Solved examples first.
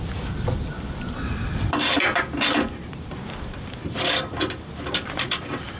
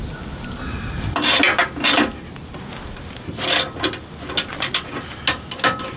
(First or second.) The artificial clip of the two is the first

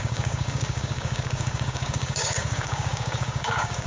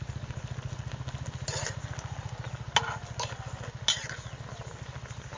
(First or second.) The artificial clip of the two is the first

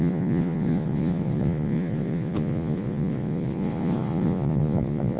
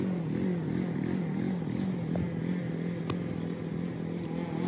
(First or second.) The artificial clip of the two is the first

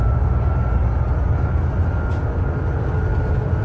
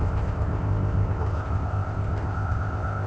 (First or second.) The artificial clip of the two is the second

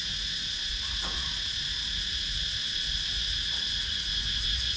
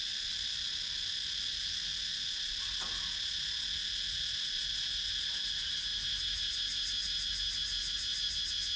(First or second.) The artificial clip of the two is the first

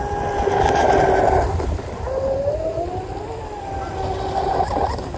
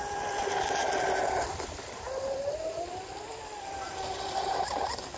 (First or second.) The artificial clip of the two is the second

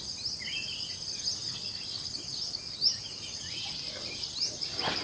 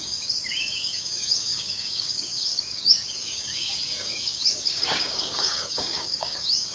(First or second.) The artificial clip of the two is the second